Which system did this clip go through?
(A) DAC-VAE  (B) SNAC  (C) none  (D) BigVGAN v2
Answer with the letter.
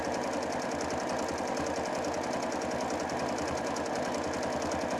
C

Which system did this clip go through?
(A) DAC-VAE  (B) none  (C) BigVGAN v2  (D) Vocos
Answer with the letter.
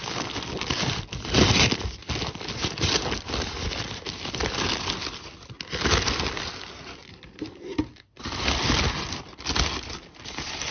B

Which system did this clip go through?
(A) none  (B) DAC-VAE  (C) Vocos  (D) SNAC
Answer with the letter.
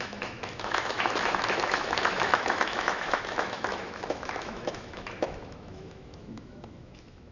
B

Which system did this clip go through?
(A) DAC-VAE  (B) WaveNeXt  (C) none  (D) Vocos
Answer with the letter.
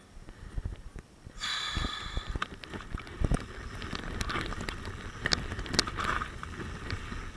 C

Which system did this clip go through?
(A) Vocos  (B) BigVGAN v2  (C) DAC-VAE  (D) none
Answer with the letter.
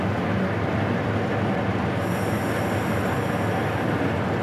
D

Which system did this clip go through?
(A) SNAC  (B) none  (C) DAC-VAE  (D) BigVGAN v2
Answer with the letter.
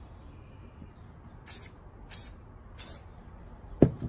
B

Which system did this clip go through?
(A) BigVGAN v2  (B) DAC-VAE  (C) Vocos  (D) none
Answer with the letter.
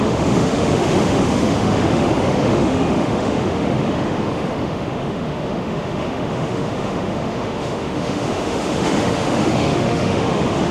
B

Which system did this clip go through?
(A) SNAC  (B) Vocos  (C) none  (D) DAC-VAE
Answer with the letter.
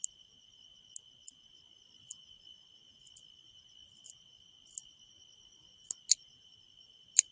C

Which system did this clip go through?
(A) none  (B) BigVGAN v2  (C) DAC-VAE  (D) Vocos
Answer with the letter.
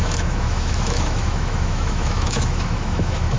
C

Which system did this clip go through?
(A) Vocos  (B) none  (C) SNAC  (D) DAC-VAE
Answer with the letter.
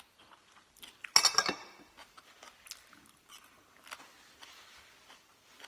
B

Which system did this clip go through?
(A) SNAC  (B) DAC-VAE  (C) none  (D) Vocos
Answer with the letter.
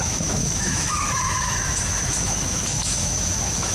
B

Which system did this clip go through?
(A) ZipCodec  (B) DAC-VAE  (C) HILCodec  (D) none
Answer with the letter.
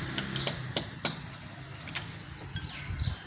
D